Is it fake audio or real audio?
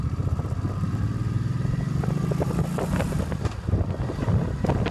real